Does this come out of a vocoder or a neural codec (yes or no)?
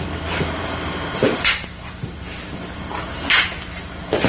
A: yes